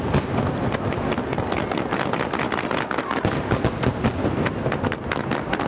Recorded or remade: recorded